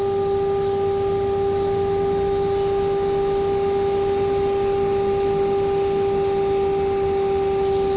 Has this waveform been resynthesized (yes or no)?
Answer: no